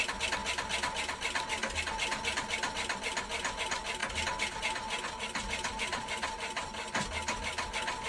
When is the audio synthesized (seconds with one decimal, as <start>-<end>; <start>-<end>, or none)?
none